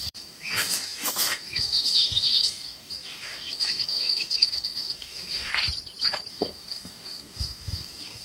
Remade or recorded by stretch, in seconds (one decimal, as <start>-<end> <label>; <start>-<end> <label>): 0.0-5.5 remade; 5.5-6.3 recorded; 6.3-8.2 remade